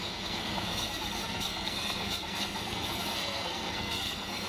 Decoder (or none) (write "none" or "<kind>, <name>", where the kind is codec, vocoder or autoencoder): codec, SNAC